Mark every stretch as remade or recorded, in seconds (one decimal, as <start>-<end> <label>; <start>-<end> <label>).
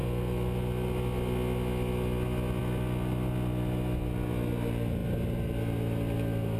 0.0-6.6 recorded